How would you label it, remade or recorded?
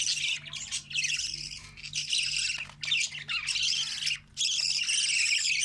recorded